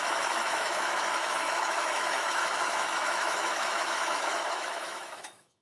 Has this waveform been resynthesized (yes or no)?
yes